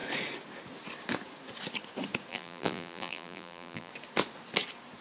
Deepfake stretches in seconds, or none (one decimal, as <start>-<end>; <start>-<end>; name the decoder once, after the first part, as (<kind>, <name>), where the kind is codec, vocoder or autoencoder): 2.3-3.9 (vocoder, BigVGAN v2)